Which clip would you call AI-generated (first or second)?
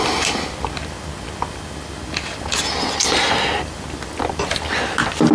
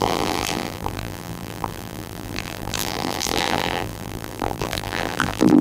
second